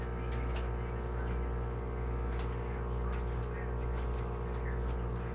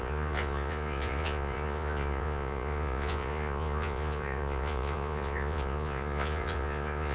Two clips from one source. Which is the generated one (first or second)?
second